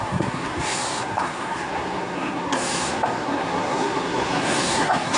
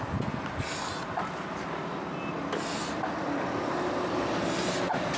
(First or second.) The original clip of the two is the second